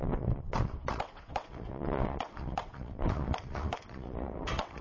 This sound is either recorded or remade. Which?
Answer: remade